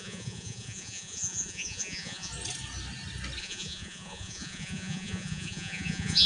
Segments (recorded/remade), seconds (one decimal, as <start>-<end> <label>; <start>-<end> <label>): 0.0-2.3 remade; 2.3-3.4 recorded; 3.4-6.3 remade